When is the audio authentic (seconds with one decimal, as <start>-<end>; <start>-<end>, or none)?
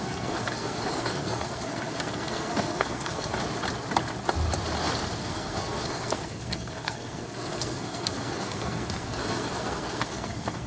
3.3-5.2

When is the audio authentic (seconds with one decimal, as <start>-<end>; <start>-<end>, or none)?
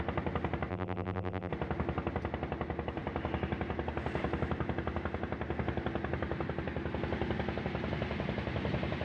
0.0-0.7; 1.5-9.0